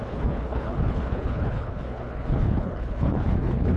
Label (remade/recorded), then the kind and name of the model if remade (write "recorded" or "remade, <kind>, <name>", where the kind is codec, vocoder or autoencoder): remade, codec, HILCodec